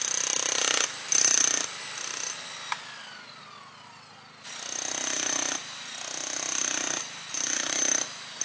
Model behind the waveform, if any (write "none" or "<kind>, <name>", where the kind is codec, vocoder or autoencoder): none